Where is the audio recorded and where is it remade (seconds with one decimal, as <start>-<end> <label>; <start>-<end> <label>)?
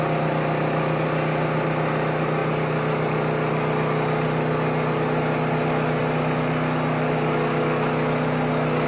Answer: 0.0-8.9 recorded